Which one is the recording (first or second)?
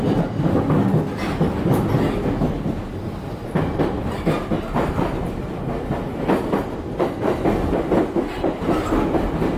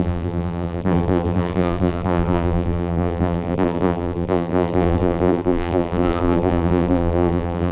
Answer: first